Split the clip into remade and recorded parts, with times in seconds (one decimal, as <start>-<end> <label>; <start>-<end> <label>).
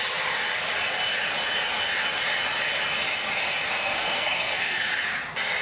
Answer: 0.0-3.7 recorded; 3.7-4.9 remade; 4.9-5.6 recorded